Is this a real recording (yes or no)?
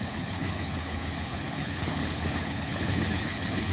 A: no